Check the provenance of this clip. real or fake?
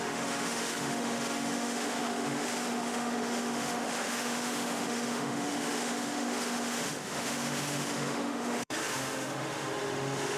fake